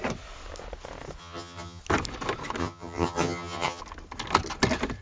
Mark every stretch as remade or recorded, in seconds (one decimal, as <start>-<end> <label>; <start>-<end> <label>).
0.0-1.2 recorded; 1.2-1.8 remade; 1.8-2.6 recorded; 2.6-3.8 remade; 3.8-5.0 recorded